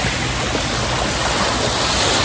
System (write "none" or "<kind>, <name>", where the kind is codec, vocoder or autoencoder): none